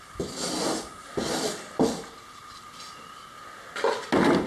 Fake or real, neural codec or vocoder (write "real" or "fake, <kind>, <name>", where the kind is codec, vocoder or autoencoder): real